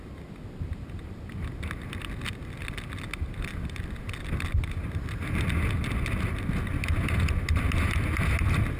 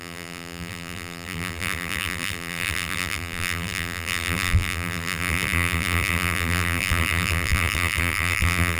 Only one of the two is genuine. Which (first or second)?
first